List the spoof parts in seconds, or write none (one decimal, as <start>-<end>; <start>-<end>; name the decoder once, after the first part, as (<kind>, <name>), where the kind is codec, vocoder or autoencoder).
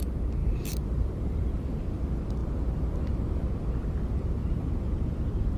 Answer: 0.4-2.0 (vocoder, BigVGAN v2)